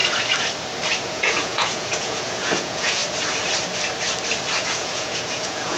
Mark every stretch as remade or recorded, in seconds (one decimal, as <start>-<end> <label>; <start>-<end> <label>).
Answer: 0.0-1.1 recorded; 1.1-3.0 remade; 3.0-4.6 recorded; 4.6-5.8 remade